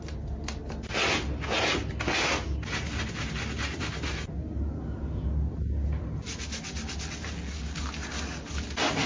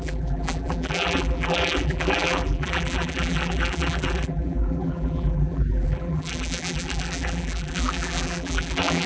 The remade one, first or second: second